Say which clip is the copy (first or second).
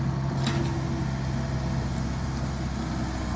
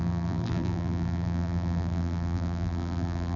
second